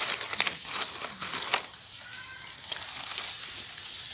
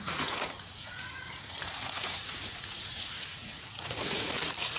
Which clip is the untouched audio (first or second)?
first